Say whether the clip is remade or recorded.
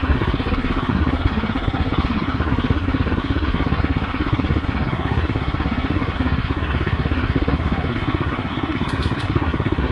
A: remade